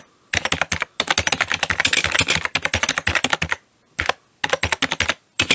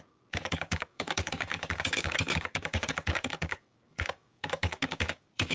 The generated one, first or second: second